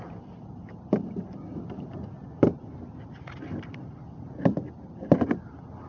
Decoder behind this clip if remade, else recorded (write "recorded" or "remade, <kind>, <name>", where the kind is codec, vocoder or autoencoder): recorded